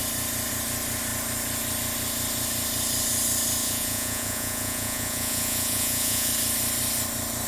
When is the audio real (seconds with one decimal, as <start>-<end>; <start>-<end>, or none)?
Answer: 0.0-3.6; 6.3-7.5